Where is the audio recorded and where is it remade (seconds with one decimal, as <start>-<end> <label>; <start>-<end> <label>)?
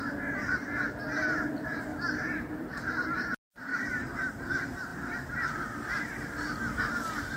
0.0-1.9 recorded; 1.9-2.9 remade; 2.9-3.7 recorded; 3.7-4.3 remade; 4.3-7.4 recorded